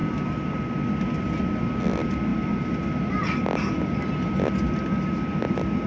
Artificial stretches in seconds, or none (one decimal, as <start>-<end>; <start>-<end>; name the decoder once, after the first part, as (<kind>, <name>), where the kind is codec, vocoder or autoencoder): none